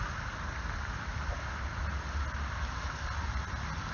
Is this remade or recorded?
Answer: recorded